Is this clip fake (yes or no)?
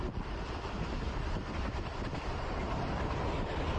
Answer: yes